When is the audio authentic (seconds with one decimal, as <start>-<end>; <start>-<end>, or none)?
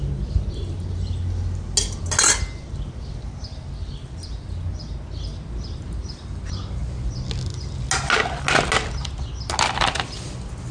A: 0.0-10.7